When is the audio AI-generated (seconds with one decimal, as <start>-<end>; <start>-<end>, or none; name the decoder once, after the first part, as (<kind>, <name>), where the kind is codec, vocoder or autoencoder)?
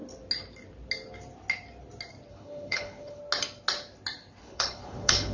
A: 2.3-3.2 (codec, HILCodec); 4.4-5.3